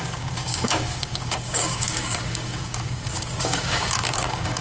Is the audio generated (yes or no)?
yes